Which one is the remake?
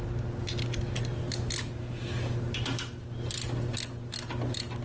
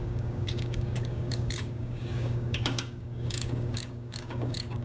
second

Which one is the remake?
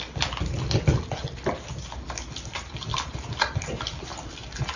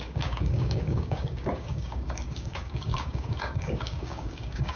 second